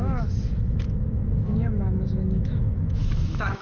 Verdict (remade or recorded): remade